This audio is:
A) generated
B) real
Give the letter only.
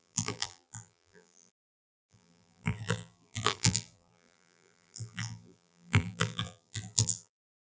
A